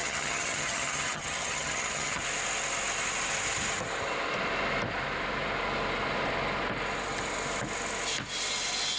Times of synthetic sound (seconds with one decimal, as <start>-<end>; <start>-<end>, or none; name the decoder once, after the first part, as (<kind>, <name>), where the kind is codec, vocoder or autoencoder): 0.0-2.2 (vocoder, HiFi-GAN)